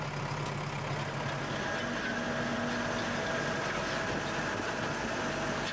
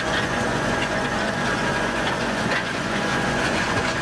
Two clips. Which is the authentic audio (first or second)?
first